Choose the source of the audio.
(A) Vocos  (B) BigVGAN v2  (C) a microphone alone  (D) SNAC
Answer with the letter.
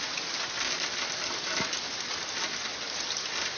C